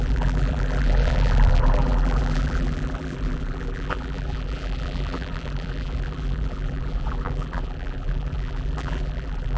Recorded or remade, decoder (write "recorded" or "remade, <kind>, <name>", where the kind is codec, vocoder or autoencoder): remade, vocoder, BigVGAN v2